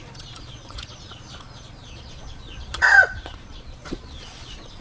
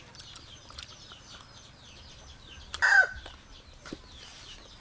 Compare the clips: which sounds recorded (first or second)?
second